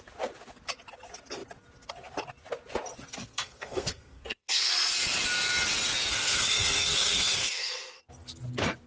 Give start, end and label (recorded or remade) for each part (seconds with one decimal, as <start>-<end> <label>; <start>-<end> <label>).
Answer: 0.0-3.2 recorded; 3.2-4.7 remade; 4.7-6.1 recorded; 6.1-8.0 remade; 8.0-8.9 recorded